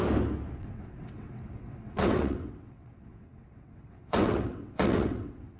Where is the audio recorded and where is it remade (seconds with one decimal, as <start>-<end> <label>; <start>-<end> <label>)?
0.0-0.6 recorded; 0.6-5.6 remade